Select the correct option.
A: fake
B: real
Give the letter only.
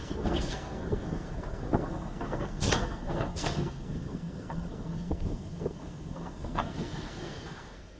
A